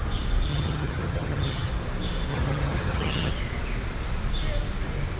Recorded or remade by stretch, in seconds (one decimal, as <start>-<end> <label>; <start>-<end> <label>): 0.0-0.5 recorded; 0.5-1.7 remade; 1.7-2.3 recorded; 2.3-3.3 remade; 3.3-5.2 recorded

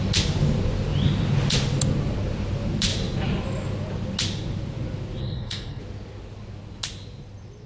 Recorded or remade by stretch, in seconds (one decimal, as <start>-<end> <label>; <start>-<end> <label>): 0.0-5.2 recorded; 5.2-5.8 remade; 5.8-7.7 recorded

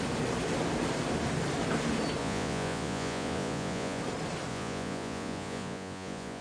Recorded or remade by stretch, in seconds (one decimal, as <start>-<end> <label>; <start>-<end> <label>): 0.0-2.2 recorded; 2.2-4.0 remade; 4.0-4.5 recorded; 4.5-6.4 remade

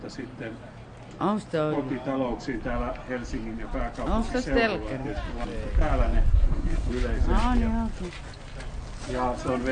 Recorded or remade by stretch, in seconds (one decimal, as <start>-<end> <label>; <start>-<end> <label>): 0.0-6.3 recorded; 6.3-6.9 remade; 6.9-9.7 recorded

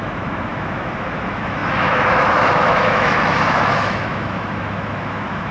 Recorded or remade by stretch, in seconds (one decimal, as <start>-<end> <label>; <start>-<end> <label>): 0.0-5.5 remade

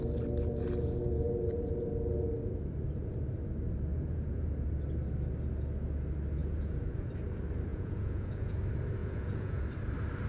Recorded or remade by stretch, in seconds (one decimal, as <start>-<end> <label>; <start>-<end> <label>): 0.0-3.9 recorded; 3.9-4.5 remade; 4.5-6.4 recorded; 6.4-7.1 remade; 7.1-7.7 recorded; 7.7-8.6 remade; 8.6-9.0 recorded; 9.0-9.6 remade; 9.6-10.3 recorded

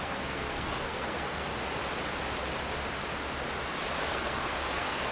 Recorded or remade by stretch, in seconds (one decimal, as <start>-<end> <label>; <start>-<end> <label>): 0.0-1.5 remade; 1.5-4.1 recorded; 4.1-5.1 remade